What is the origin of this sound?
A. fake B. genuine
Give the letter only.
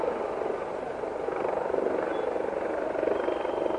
B